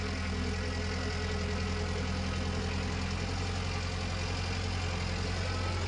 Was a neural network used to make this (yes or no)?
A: no